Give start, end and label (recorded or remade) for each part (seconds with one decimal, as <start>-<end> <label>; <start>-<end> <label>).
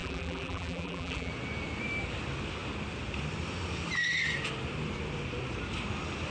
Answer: 0.0-1.3 remade; 1.3-6.3 recorded